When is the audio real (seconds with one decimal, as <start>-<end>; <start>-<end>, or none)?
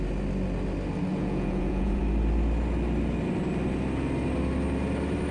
0.0-1.1; 2.0-5.3